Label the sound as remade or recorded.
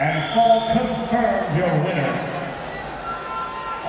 recorded